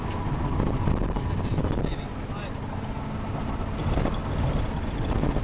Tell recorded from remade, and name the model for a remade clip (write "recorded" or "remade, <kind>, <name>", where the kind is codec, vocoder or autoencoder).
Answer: recorded